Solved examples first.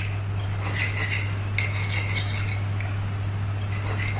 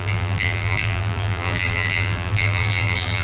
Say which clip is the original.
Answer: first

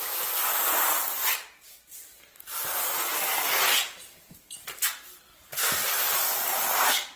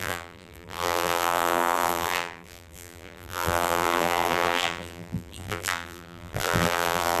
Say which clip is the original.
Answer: first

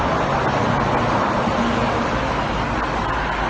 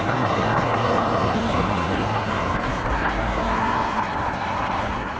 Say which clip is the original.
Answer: first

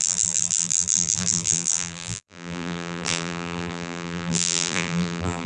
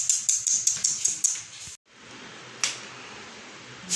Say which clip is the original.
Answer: second